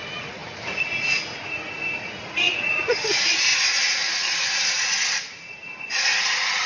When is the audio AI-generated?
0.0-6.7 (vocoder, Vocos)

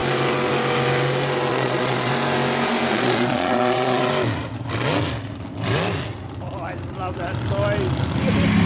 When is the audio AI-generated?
1.5-2.1 (vocoder, Vocos); 2.9-4.1

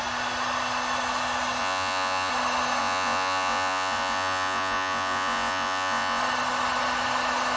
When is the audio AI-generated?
1.6-2.3 (vocoder, Vocos); 2.8-6.2